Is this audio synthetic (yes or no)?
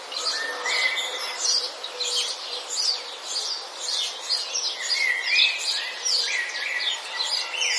no